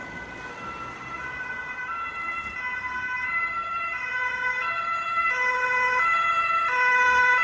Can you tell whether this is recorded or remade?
recorded